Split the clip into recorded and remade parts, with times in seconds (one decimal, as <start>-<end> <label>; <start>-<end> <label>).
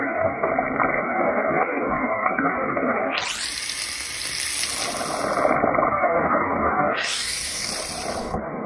0.0-0.5 remade; 0.5-1.0 recorded; 1.0-3.2 remade; 3.2-5.9 recorded; 5.9-7.7 remade; 7.7-8.2 recorded; 8.2-8.7 remade